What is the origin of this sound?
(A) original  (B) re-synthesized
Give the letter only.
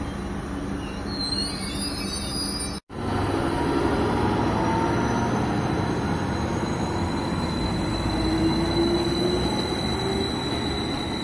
A